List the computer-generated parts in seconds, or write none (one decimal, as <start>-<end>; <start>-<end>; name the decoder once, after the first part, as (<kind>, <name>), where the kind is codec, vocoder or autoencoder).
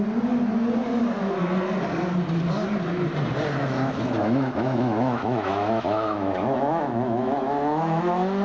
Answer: 3.6-8.0 (autoencoder, DAC-VAE)